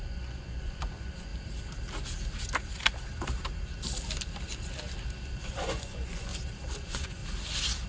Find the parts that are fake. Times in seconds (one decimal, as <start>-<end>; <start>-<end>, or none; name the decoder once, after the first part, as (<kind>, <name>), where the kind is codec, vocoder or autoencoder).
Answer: 0.0-1.3 (vocoder, Vocos); 5.5-6.3; 6.8-7.2